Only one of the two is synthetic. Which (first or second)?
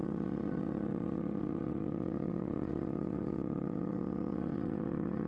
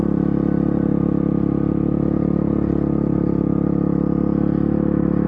first